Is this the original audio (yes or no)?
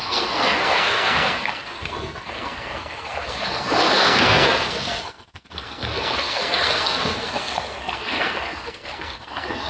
no